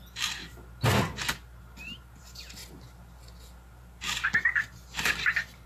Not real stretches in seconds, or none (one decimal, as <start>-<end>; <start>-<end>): none